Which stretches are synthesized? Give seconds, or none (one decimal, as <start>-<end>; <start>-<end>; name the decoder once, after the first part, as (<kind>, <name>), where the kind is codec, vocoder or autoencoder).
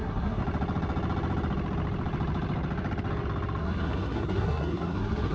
0.0-0.4 (codec, SNAC); 3.6-5.3